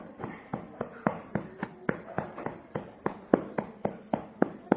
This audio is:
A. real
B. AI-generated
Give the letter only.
B